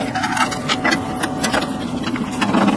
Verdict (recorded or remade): recorded